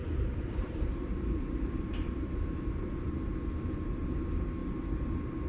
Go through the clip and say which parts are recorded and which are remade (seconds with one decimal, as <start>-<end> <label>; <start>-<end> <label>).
0.0-3.3 remade; 3.3-5.5 recorded